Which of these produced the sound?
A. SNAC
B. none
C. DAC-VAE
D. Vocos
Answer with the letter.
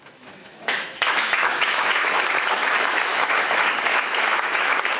C